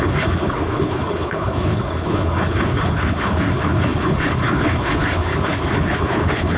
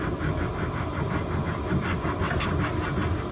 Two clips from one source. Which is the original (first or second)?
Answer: second